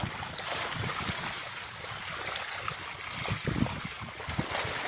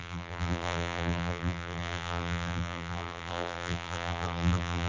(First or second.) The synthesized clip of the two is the second